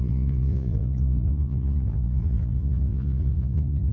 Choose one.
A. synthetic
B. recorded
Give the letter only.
A